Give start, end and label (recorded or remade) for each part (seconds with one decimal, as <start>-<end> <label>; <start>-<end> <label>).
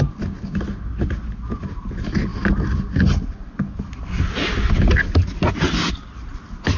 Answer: 0.0-6.8 recorded